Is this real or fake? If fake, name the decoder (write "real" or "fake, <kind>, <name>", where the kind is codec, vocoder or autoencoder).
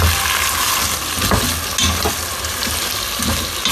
real